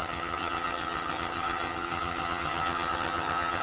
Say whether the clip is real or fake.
fake